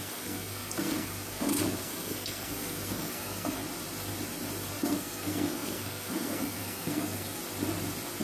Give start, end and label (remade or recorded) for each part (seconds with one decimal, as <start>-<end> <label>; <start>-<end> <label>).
0.0-3.6 remade; 3.6-4.7 recorded; 4.7-7.4 remade; 7.4-8.2 recorded